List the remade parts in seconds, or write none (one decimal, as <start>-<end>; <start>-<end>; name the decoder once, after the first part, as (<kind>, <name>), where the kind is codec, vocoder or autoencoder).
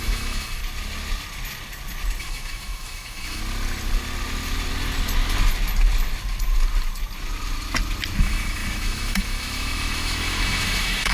0.0-0.6 (autoencoder, DAC-VAE); 2.2-3.4; 8.2-11.1